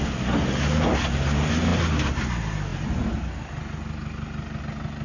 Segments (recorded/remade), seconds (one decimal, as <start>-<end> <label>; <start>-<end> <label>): 0.0-5.0 recorded